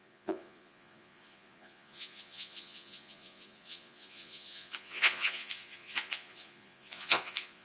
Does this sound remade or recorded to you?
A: remade